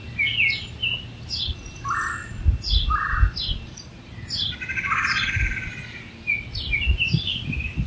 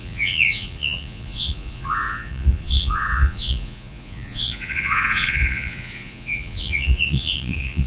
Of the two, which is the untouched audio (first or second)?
first